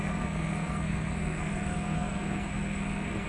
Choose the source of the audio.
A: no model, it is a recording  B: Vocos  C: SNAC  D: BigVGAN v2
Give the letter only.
C